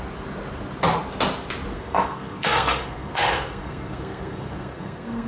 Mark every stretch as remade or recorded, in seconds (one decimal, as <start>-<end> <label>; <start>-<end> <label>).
0.0-1.7 recorded; 1.7-5.3 remade